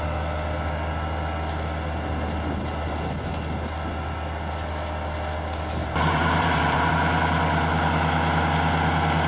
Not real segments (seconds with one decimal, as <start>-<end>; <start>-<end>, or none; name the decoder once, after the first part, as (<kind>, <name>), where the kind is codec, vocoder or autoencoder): 5.8-6.9 (vocoder, BigVGAN v2)